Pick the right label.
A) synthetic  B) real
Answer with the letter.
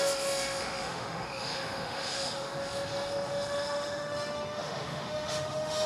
A